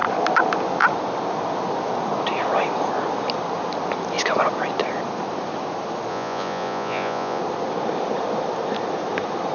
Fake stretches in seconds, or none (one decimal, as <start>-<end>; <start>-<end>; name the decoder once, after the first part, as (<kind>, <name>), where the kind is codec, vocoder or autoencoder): 6.1-7.4 (vocoder, Vocos)